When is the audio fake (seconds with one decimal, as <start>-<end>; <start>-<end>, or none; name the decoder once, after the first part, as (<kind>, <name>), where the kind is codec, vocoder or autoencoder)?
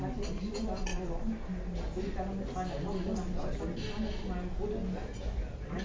none